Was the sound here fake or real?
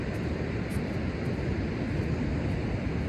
real